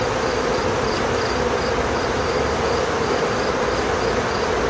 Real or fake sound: real